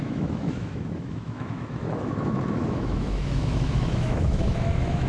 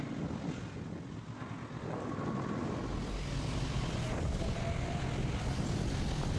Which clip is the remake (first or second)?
first